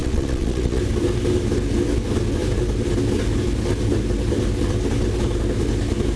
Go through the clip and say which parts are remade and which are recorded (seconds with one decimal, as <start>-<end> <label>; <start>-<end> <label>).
0.0-0.8 remade; 0.8-6.2 recorded